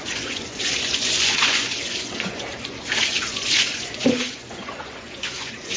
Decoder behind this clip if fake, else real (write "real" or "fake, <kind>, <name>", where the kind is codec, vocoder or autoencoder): fake, vocoder, Vocos